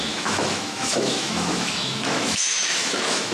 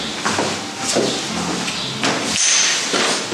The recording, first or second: second